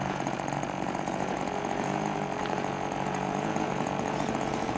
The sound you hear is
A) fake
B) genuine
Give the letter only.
A